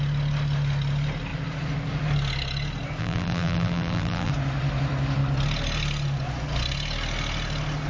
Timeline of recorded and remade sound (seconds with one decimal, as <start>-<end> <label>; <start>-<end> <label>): 0.0-3.0 recorded; 3.0-4.3 remade; 4.3-7.9 recorded